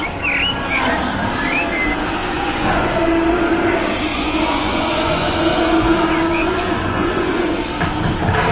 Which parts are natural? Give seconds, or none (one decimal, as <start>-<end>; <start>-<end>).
0.0-2.2; 3.0-4.1; 7.6-8.5